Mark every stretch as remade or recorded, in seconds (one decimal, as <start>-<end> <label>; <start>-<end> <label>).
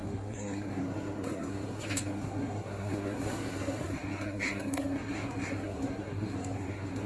0.0-7.1 remade